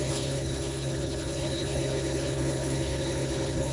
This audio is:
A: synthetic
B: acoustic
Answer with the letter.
A